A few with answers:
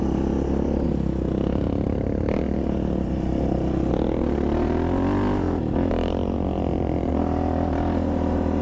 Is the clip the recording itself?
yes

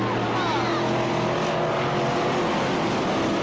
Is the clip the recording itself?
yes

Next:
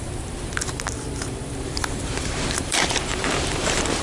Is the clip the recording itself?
no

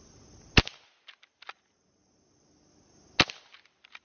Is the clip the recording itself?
yes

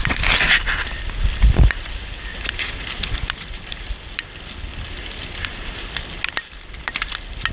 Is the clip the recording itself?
yes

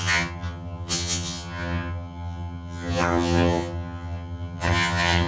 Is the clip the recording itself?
no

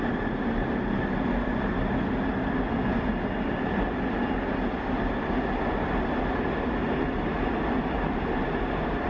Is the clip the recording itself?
yes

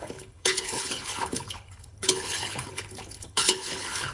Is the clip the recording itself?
no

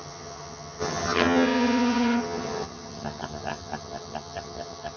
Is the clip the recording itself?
no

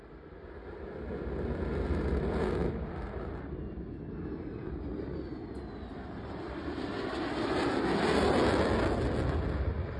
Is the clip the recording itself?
yes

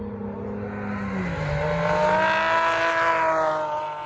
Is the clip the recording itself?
yes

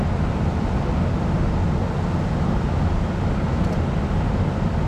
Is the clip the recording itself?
yes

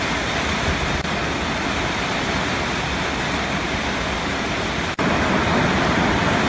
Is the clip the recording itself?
yes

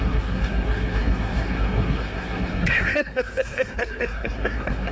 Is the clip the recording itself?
no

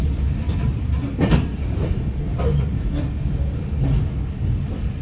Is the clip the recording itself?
yes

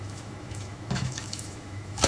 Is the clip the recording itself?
no